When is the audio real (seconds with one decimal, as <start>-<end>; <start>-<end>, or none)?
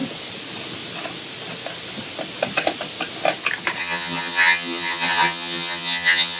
0.0-3.8